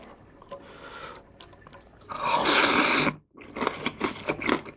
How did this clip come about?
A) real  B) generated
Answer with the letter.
A